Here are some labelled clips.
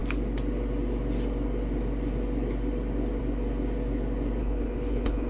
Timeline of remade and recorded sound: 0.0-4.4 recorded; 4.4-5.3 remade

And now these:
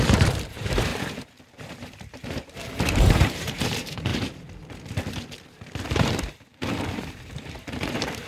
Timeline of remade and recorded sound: 0.0-0.9 remade; 0.9-1.5 recorded; 1.5-4.1 remade; 4.1-5.9 recorded; 5.9-8.3 remade